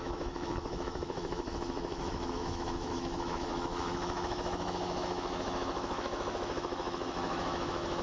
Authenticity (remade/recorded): remade